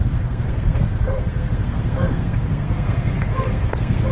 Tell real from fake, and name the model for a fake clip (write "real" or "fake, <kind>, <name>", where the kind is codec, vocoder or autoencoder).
fake, codec, SNAC